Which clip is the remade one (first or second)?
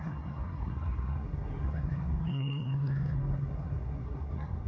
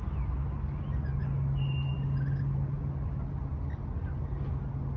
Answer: first